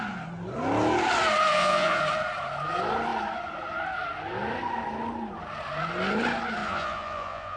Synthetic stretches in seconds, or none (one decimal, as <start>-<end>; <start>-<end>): 1.5-2.0; 6.6-7.6